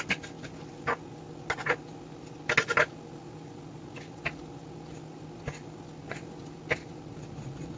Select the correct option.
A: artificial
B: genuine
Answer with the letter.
B